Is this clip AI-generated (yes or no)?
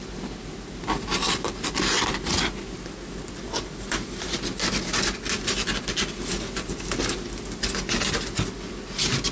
no